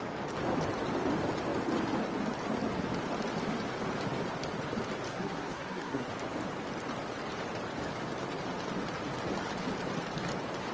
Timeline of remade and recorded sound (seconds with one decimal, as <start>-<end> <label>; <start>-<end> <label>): 0.0-5.1 recorded; 5.1-6.1 remade; 6.1-10.7 recorded